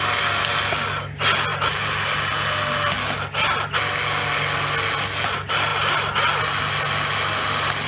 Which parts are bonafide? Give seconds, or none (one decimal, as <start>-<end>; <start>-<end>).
0.0-7.9

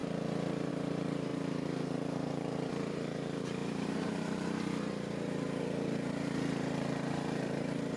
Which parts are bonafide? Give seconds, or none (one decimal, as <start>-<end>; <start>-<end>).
0.0-0.7

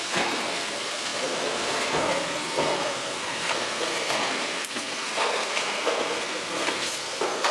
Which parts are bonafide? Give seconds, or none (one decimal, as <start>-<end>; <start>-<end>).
none

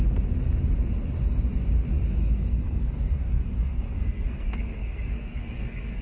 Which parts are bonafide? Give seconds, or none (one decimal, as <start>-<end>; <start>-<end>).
0.0-2.2

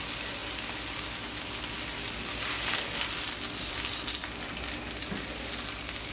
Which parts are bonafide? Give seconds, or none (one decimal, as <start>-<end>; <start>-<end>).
0.0-6.1